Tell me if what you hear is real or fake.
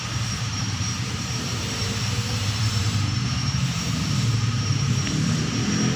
fake